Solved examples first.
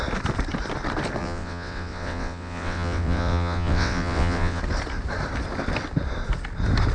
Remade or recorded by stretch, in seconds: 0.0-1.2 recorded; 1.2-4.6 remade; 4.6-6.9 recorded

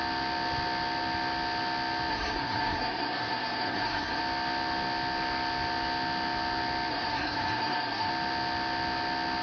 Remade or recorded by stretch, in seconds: 0.0-2.1 recorded; 2.1-4.2 remade; 4.2-6.9 recorded; 6.9-8.1 remade; 8.1-9.4 recorded

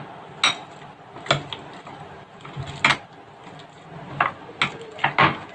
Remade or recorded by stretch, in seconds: 0.0-5.5 recorded

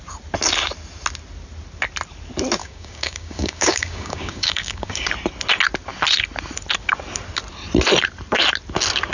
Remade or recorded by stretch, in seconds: 0.0-2.6 recorded; 2.6-5.1 remade; 5.1-9.1 recorded

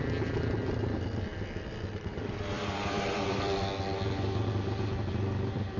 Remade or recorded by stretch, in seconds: 0.0-3.7 remade; 3.7-5.1 recorded; 5.1-5.8 remade